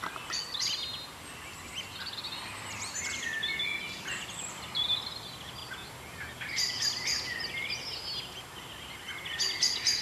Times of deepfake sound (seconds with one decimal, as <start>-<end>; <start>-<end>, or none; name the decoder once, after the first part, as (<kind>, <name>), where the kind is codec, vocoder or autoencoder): none